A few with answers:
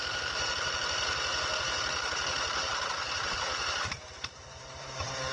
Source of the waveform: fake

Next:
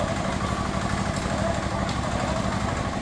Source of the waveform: fake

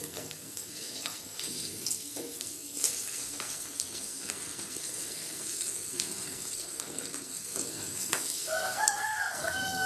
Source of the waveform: fake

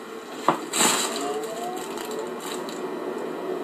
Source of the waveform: real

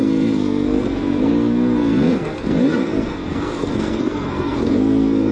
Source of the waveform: fake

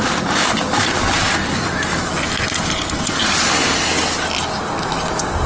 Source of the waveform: real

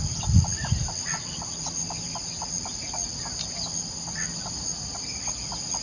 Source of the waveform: real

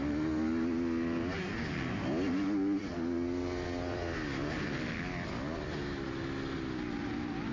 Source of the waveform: real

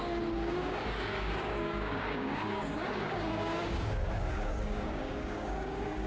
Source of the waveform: fake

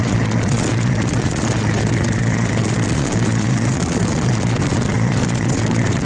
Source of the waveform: fake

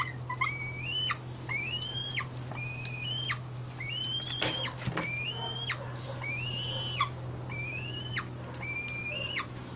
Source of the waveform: real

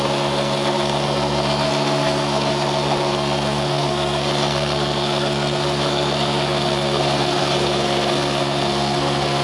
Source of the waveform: fake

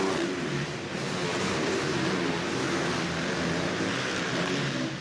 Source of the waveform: real